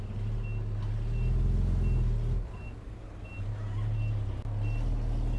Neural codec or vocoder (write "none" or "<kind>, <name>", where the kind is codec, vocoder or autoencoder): none